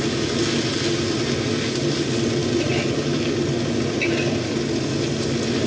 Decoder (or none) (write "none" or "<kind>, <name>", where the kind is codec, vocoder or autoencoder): none